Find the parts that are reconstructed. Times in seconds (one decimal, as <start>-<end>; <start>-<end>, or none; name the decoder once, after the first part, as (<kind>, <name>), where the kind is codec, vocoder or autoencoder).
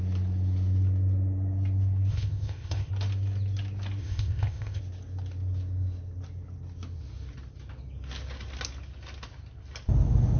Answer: 2.1-2.9 (codec, ZipCodec); 4.0-4.8